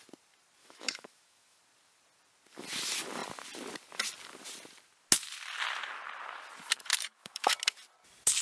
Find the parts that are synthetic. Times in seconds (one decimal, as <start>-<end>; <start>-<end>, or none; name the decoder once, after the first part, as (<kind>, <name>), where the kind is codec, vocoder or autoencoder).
0.6-1.6 (autoencoder, DAC-VAE); 6.9-7.5